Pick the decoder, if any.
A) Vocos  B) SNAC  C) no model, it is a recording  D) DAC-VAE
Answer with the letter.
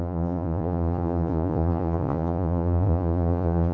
A